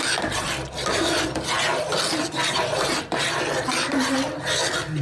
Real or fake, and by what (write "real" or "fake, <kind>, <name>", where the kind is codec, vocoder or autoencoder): real